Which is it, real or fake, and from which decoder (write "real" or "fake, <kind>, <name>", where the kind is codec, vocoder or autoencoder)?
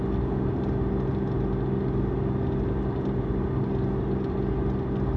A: real